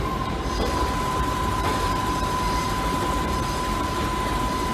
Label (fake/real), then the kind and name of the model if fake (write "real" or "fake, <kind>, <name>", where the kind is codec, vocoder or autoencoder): fake, vocoder, BigVGAN v2